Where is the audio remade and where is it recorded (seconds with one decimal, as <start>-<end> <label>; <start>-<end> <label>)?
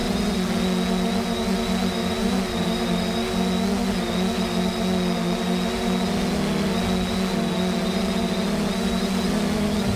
0.0-10.0 recorded